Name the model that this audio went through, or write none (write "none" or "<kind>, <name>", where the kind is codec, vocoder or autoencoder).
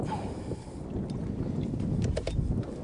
none